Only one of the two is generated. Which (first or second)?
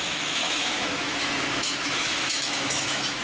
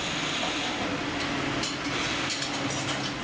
first